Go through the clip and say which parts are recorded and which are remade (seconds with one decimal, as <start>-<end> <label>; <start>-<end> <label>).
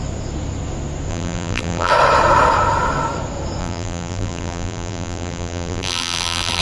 0.0-1.1 recorded; 1.1-1.9 remade; 1.9-3.6 recorded; 3.6-6.6 remade